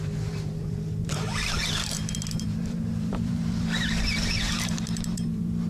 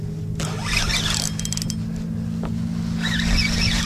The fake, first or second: first